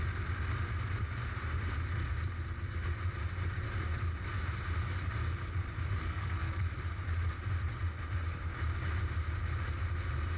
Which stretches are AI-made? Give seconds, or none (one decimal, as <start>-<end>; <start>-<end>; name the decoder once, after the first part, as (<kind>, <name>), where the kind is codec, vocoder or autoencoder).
6.0-6.7 (codec, SNAC)